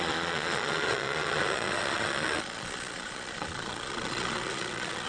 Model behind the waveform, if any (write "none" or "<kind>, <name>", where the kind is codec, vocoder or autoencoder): vocoder, Vocos